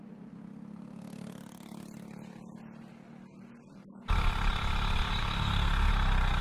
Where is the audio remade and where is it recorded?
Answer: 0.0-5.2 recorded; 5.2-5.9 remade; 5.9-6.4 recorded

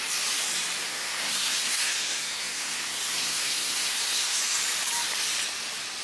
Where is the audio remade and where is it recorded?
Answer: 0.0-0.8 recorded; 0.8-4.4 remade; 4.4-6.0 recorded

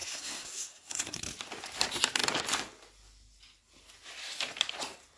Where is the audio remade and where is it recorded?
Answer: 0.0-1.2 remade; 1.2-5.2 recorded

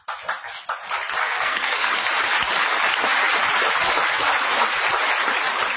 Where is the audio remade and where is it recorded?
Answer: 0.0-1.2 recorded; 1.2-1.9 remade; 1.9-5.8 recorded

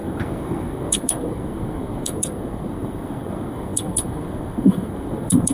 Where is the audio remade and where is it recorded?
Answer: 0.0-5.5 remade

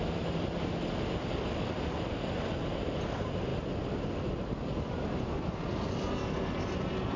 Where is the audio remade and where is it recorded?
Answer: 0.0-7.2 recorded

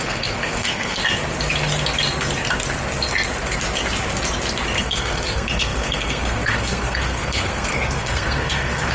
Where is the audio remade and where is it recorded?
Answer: 0.0-1.0 remade; 1.0-4.8 recorded; 4.8-8.9 remade

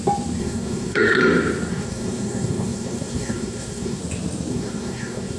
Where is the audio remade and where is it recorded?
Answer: 0.0-0.4 recorded; 0.4-1.2 remade; 1.2-1.7 recorded; 1.7-4.0 remade; 4.0-4.5 recorded; 4.5-5.4 remade